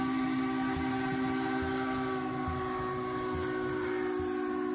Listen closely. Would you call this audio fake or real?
real